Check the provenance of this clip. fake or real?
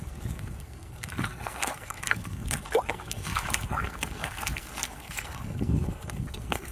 fake